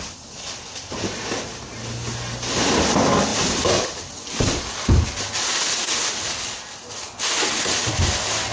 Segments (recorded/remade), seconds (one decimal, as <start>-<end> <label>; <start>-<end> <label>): 0.0-3.3 recorded; 3.3-4.1 remade; 4.1-8.5 recorded